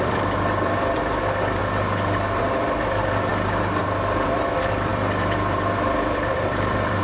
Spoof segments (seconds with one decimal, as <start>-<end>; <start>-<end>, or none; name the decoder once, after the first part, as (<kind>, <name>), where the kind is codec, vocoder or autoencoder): 0.0-1.6 (vocoder, BigVGAN v2); 2.4-3.3; 3.8-7.0